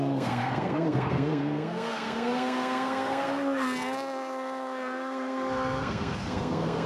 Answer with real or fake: fake